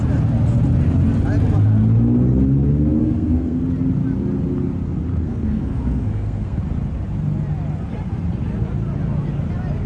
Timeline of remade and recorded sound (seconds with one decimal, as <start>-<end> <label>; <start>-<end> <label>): 0.0-3.0 recorded; 3.0-3.6 remade; 3.6-5.1 recorded; 5.1-6.6 remade; 6.6-9.9 recorded